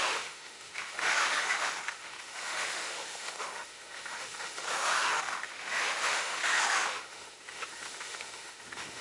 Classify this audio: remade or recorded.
remade